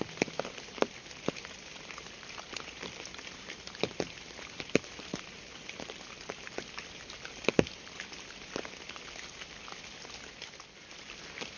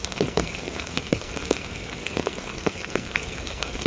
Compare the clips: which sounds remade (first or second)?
second